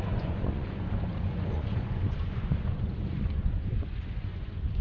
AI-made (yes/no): yes